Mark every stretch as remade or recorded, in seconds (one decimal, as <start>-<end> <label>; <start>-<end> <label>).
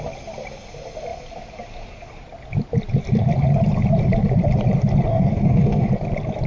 0.0-5.1 recorded; 5.1-5.9 remade; 5.9-6.5 recorded